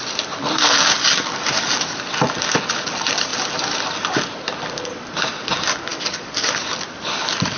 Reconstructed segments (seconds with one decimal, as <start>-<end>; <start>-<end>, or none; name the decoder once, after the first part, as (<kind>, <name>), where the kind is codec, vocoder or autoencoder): 5.9-6.5 (codec, DAC)